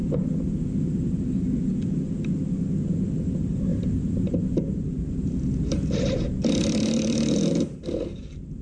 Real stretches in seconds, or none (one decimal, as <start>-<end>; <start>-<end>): 0.0-3.7; 5.3-6.6